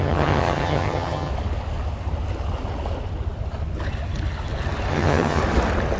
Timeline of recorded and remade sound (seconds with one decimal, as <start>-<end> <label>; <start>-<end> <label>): 0.0-1.3 remade; 1.3-4.9 recorded; 4.9-5.4 remade; 5.4-6.0 recorded